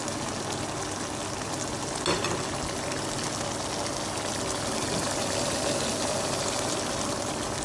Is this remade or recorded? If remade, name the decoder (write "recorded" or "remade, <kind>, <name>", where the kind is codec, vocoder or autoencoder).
recorded